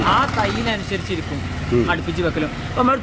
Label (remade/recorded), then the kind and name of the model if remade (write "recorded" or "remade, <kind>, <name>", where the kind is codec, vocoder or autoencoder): recorded